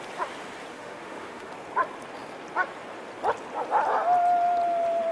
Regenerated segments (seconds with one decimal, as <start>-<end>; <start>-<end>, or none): 0.7-1.5